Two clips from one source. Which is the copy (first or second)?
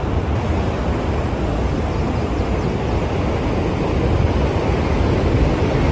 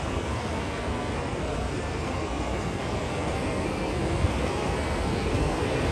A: second